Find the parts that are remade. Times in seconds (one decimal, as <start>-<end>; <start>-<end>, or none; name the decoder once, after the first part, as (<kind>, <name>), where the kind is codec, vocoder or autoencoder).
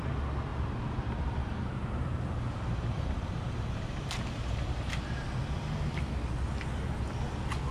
0.5-5.0 (vocoder, BigVGAN v2)